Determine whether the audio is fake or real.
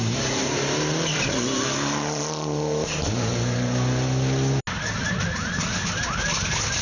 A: real